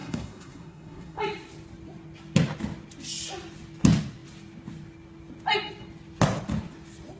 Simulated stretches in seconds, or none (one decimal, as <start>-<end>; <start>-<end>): 0.0-1.2